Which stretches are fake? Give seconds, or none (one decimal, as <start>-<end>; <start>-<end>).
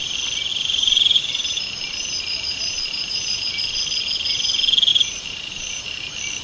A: 0.5-3.4; 4.9-5.8